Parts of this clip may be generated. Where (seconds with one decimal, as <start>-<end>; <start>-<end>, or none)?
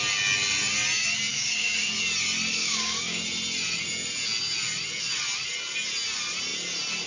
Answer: 1.3-1.9; 2.5-3.2